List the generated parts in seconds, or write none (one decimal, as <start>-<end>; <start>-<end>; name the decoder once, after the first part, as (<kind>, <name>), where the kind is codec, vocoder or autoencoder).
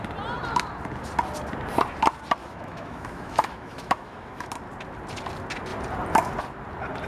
2.4-4.5 (autoencoder, DAC-VAE)